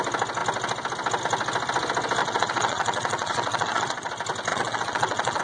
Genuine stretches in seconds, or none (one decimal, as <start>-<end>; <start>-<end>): 0.0-2.2; 4.1-4.5